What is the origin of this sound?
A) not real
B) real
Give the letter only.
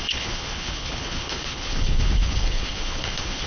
A